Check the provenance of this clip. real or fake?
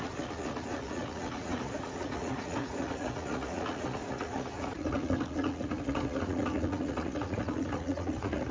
fake